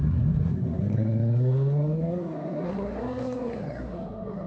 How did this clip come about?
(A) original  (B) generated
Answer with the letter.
B